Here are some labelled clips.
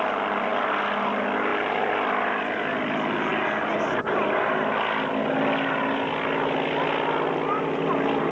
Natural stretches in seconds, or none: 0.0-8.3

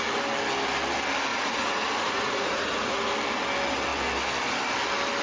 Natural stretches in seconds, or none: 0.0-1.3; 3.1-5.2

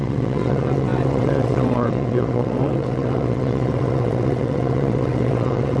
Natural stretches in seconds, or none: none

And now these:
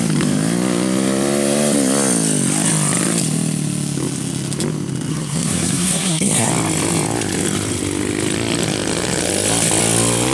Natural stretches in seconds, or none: 0.0-5.1; 6.5-10.3